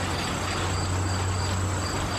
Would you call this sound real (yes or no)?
yes